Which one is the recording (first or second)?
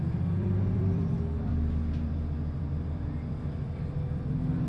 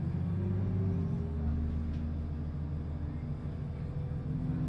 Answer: second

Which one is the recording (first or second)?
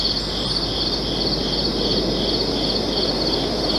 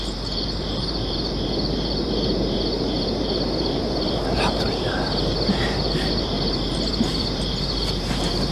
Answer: first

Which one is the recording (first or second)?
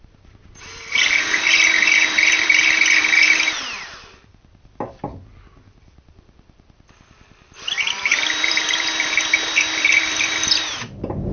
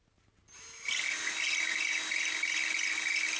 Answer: second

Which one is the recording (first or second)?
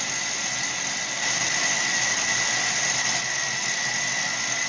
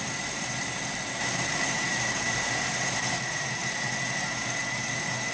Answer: first